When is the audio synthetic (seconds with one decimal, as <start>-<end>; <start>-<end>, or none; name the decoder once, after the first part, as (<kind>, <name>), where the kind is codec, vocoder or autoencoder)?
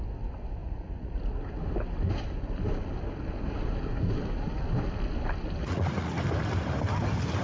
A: 0.6-1.2 (vocoder, Vocos); 5.6-6.2